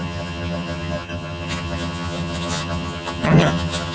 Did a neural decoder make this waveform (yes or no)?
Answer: yes